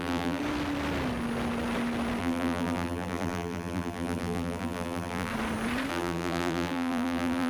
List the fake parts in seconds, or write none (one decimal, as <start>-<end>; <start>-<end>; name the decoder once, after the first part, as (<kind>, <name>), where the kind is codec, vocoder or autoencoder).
0.0-0.4 (vocoder, BigVGAN v2); 2.2-5.3; 5.9-7.5